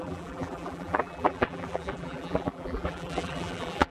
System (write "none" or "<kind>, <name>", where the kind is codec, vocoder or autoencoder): vocoder, BigVGAN v2